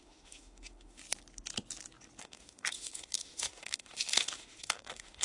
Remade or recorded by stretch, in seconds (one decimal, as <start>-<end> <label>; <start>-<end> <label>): 0.0-1.0 remade; 1.0-2.2 recorded; 2.2-5.2 remade